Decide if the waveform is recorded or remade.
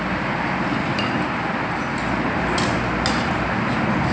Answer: recorded